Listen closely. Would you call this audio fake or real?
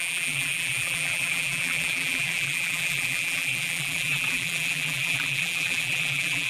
fake